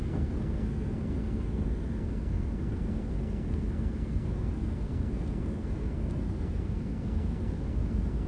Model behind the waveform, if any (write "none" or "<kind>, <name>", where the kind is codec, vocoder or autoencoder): codec, SNAC